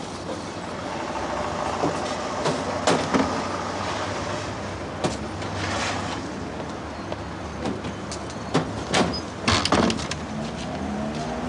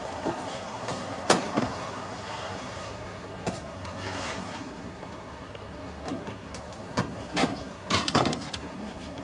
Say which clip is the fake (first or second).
second